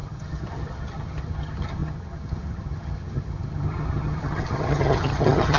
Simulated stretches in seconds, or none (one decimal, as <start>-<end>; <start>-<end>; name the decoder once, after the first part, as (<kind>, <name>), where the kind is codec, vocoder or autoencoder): 0.0-5.6 (vocoder, HiFi-GAN)